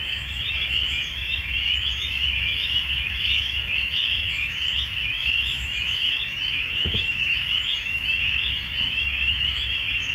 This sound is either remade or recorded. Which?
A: remade